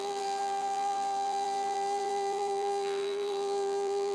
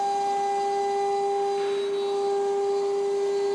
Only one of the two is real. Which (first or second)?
second